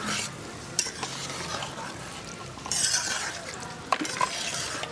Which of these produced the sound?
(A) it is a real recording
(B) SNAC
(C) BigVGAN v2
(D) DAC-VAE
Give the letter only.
A